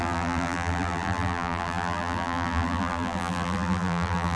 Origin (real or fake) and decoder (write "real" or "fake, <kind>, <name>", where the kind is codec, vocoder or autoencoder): fake, vocoder, BigVGAN v2